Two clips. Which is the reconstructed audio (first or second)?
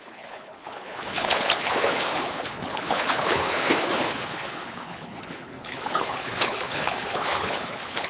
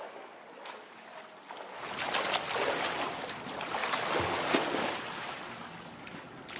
first